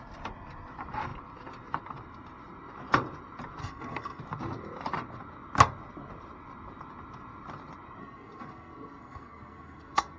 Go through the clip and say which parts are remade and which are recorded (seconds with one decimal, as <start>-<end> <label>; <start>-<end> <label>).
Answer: 0.0-3.6 recorded; 3.6-4.2 remade; 4.2-8.0 recorded; 8.0-10.2 remade